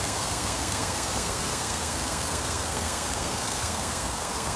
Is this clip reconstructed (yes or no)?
yes